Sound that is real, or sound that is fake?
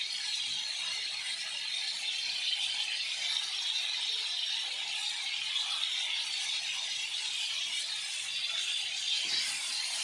real